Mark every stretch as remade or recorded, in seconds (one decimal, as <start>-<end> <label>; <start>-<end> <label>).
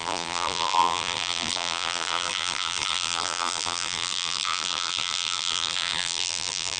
0.0-6.8 remade